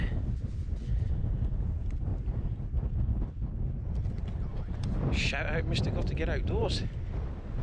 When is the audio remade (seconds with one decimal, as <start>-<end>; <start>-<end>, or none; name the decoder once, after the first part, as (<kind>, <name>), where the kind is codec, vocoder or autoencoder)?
4.5-5.3 (vocoder, BigVGAN v2); 6.4-6.9